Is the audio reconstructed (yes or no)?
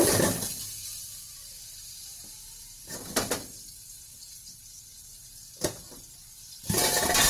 no